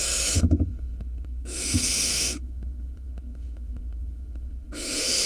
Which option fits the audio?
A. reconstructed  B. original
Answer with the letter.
A